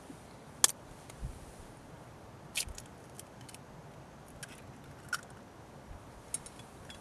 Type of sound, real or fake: real